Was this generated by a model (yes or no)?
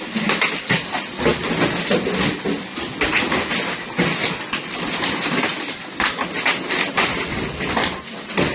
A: no